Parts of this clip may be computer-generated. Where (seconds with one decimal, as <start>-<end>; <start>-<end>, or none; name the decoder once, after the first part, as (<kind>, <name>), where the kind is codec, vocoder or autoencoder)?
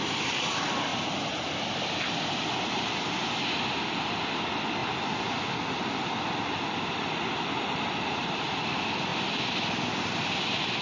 0.0-0.9 (vocoder, BigVGAN v2); 4.2-4.8; 6.9-9.1; 10.0-10.8